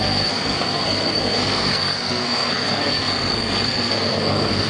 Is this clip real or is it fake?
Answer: fake